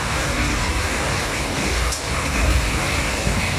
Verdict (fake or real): fake